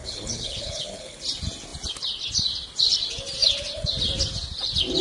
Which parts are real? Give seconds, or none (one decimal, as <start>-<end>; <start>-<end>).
1.2-5.0